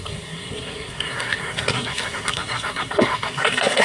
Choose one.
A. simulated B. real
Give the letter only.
A